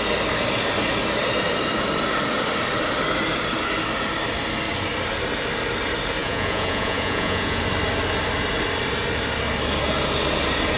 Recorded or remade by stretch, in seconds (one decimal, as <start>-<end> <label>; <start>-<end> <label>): 0.0-6.2 recorded; 6.2-7.6 remade; 7.6-10.8 recorded